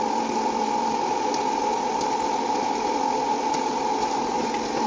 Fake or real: real